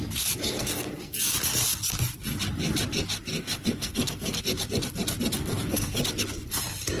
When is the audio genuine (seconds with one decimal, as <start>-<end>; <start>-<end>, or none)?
0.0-0.4; 1.3-3.3; 4.4-5.4; 6.0-7.0